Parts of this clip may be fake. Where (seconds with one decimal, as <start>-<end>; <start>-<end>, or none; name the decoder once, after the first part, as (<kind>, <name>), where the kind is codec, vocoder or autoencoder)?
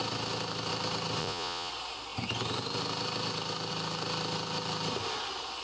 1.2-1.7 (vocoder, Vocos)